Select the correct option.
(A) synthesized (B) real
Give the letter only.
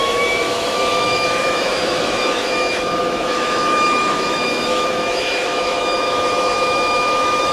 A